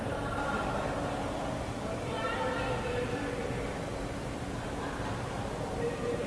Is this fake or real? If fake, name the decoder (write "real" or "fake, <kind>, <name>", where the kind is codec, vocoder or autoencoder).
fake, vocoder, BigVGAN v2